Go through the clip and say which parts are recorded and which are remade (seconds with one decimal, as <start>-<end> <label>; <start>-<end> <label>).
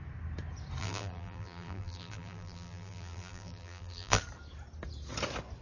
0.0-0.8 recorded; 0.8-4.2 remade; 4.2-5.6 recorded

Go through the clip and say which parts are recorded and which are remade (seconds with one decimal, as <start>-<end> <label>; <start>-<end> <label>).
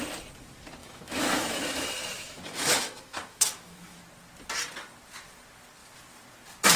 0.0-0.8 recorded; 0.8-4.0 remade; 4.0-6.8 recorded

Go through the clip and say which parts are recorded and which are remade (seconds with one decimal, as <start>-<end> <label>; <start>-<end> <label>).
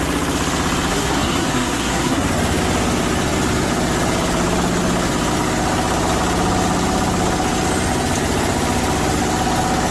0.0-0.9 recorded; 0.9-2.3 remade; 2.3-9.9 recorded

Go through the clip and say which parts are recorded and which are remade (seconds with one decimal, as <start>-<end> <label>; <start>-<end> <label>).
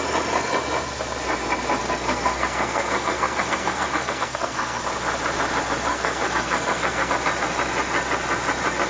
0.0-1.8 recorded; 1.8-4.8 remade; 4.8-5.9 recorded; 5.9-7.1 remade; 7.1-8.9 recorded